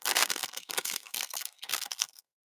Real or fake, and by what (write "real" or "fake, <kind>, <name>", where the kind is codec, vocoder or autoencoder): fake, codec, SNAC